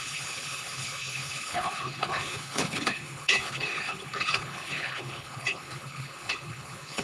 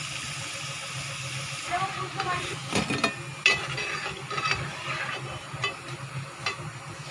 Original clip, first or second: second